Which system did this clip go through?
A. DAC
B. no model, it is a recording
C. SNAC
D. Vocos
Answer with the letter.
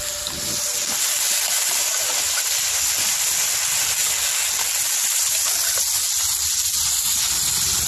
B